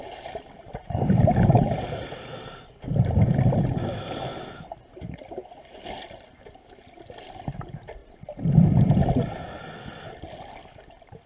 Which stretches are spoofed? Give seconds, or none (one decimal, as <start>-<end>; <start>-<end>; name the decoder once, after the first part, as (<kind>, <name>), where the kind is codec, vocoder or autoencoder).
none